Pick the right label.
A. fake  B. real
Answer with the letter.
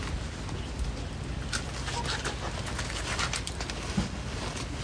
B